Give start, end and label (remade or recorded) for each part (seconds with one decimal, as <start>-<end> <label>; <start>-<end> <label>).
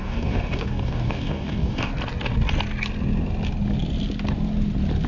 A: 0.0-1.9 remade; 1.9-5.1 recorded